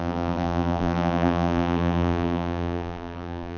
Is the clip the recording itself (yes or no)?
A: no